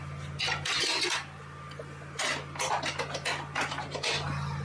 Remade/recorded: recorded